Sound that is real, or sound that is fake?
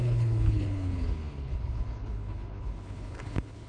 fake